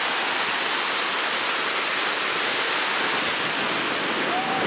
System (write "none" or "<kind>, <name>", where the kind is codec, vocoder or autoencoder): none